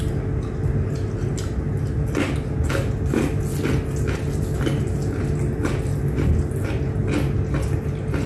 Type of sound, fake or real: real